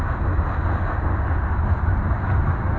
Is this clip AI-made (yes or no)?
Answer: no